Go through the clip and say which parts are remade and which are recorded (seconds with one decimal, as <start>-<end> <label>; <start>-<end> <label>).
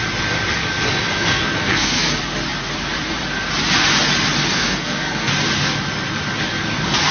0.0-1.1 recorded; 1.1-2.1 remade; 2.1-4.5 recorded; 4.5-5.3 remade; 5.3-7.1 recorded